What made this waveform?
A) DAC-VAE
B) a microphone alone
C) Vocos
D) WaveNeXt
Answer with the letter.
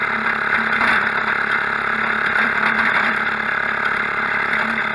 B